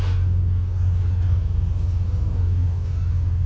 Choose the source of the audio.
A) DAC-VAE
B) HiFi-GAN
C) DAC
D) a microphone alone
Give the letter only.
C